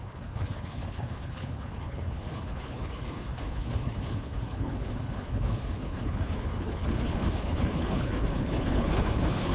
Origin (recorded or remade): remade